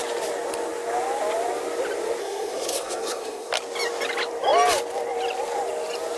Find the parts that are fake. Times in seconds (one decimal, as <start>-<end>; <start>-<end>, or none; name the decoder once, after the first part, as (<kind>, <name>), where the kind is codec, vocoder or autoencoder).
2.2-3.5 (codec, SNAC)